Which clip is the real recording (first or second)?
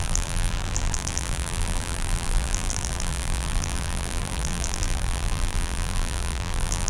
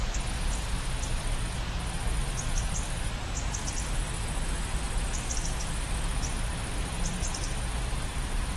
second